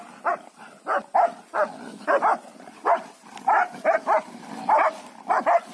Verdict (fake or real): real